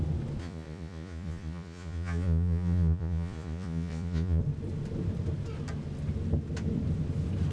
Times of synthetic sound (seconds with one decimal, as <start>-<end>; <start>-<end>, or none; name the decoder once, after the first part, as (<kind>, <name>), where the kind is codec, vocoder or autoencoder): 0.4-4.4 (vocoder, Vocos)